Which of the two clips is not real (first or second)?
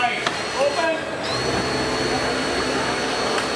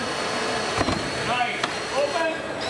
second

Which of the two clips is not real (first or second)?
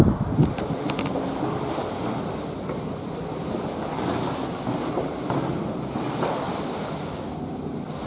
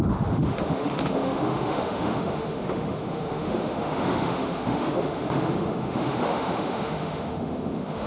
second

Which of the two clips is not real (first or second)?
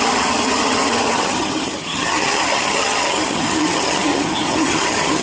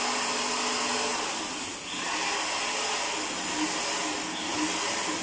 first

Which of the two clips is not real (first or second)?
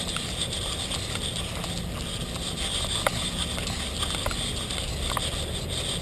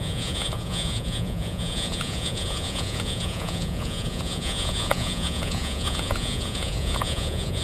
second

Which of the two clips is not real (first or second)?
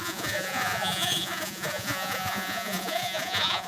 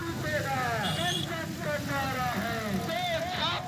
first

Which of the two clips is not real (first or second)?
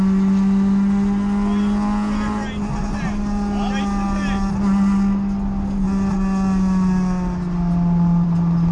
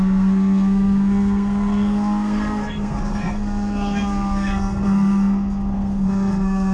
second